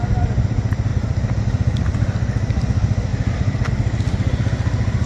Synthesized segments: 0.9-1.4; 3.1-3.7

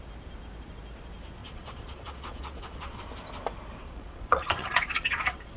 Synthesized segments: 1.4-3.0; 3.8-5.6

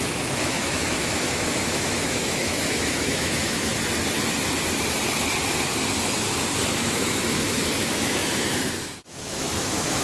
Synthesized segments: 0.0-3.7; 6.7-10.0

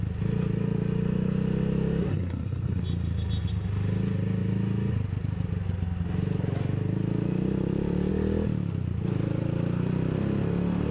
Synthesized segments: 2.0-2.8

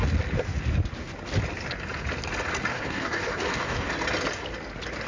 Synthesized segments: 2.7-3.9

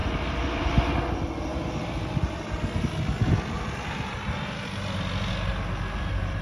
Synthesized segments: none

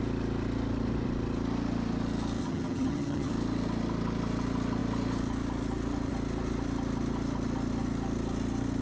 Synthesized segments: 2.4-3.3

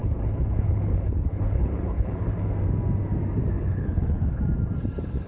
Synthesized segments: 0.0-2.5; 3.7-4.4